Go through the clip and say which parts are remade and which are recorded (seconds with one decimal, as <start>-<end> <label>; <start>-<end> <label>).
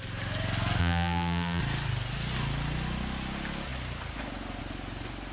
0.0-0.8 recorded; 0.8-1.6 remade; 1.6-5.3 recorded